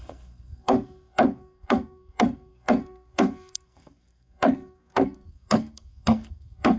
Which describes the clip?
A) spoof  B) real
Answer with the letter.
A